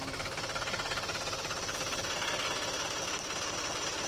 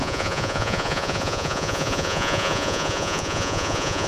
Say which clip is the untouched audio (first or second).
first